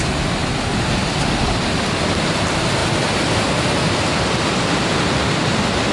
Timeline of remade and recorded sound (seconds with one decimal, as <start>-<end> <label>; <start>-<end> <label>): 0.0-5.9 recorded

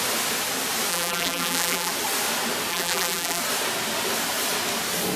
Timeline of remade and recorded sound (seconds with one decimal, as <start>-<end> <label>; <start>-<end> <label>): 0.0-0.9 recorded; 0.9-1.9 remade; 1.9-2.7 recorded; 2.7-3.4 remade; 3.4-5.2 recorded

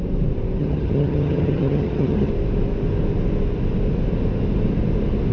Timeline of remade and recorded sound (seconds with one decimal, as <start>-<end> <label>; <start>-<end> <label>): 0.0-0.6 recorded; 0.6-2.3 remade; 2.3-5.3 recorded

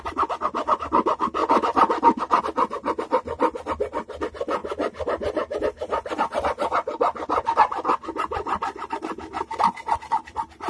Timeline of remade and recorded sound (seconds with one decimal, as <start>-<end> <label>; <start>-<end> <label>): 0.0-1.4 recorded; 1.4-2.4 remade; 2.4-10.7 recorded

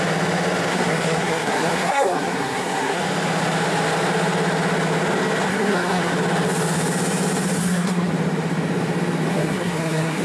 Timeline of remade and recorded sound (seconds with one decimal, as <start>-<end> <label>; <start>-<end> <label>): 0.0-0.7 recorded; 0.7-3.0 remade; 3.0-5.5 recorded; 5.5-6.1 remade; 6.1-7.6 recorded; 7.6-8.1 remade; 8.1-9.3 recorded; 9.3-10.2 remade